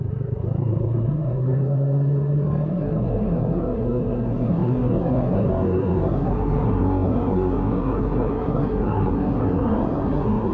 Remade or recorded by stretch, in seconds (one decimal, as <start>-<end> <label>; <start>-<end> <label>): 0.0-10.5 remade